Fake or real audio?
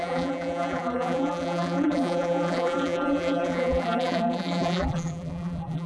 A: fake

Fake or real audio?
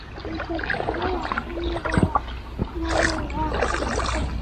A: real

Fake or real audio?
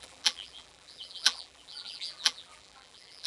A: fake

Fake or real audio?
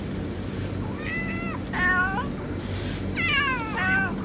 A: real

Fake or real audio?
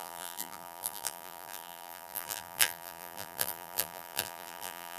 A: fake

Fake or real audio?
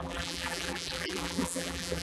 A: fake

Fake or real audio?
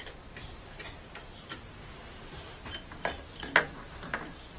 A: real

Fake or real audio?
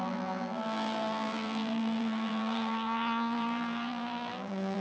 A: fake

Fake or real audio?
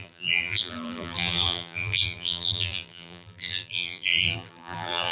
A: fake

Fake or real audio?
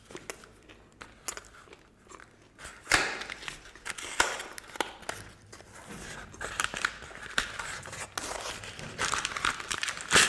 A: real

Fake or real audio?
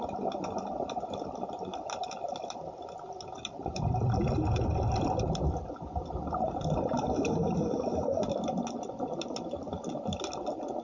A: fake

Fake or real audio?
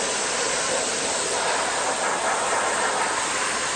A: real